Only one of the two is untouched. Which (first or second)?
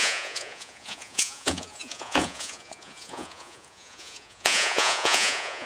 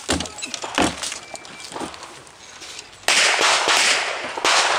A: second